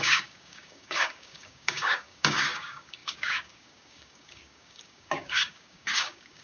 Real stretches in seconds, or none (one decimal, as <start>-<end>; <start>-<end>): none